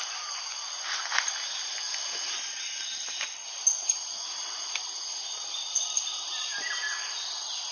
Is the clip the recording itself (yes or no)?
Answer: yes